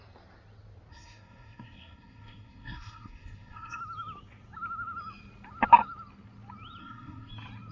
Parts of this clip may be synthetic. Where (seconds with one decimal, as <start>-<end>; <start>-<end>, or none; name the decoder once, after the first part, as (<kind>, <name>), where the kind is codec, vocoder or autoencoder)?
0.9-3.8 (codec, SNAC); 6.8-7.3